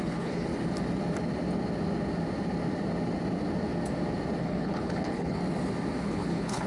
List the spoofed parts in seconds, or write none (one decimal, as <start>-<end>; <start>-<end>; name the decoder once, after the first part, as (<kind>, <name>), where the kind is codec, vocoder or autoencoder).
0.0-0.5 (codec, HILCodec); 4.4-5.4; 6.0-6.7